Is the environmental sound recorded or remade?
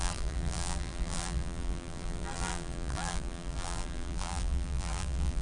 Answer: remade